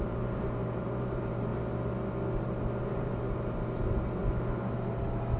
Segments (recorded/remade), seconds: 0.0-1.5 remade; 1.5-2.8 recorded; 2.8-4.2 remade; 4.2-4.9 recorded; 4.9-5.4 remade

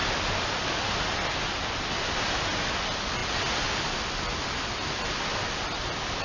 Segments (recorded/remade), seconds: 0.0-6.2 recorded

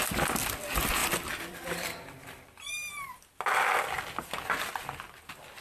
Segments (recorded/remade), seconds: 0.0-1.0 recorded; 1.0-2.9 remade; 2.9-5.6 recorded

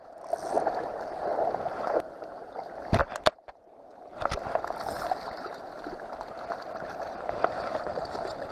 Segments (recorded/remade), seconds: 0.0-8.5 recorded

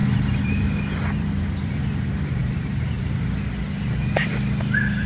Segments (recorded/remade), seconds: 0.0-1.8 remade; 1.8-2.4 recorded; 2.4-3.0 remade; 3.0-5.1 recorded

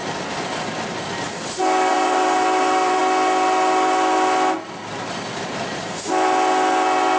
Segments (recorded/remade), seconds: 0.0-1.9 recorded; 1.9-3.0 remade; 3.0-7.2 recorded